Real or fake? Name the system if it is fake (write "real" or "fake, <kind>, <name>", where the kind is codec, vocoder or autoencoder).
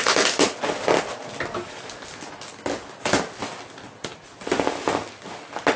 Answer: real